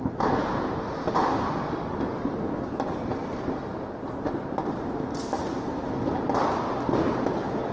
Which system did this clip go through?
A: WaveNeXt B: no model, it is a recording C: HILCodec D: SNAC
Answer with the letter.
B